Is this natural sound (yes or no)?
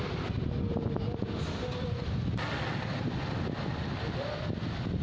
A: yes